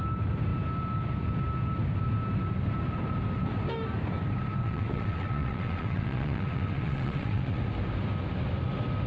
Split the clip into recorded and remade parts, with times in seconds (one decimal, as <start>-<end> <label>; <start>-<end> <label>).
0.0-4.6 recorded; 4.6-7.6 remade; 7.6-9.1 recorded